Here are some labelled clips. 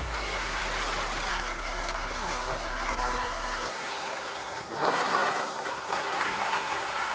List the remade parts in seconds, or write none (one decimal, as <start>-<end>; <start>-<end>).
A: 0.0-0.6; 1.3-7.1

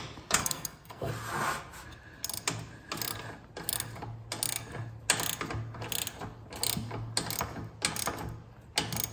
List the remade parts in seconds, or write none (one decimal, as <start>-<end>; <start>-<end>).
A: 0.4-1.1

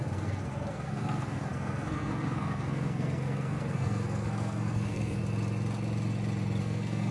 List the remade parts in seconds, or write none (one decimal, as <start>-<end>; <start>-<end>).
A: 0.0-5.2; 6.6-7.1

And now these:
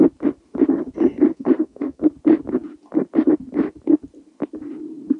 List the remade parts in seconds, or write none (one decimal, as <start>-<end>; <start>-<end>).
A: 1.3-2.0

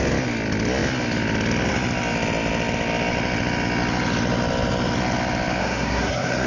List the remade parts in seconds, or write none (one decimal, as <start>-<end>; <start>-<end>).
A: 5.6-6.5

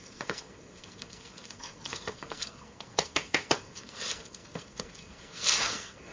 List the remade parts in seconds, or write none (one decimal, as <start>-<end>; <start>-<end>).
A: 0.0-6.1